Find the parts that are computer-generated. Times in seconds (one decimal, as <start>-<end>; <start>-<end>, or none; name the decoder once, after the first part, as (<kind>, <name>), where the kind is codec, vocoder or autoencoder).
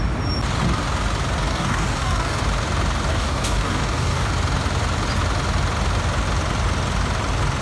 1.5-2.4 (codec, DAC); 3.1-4.3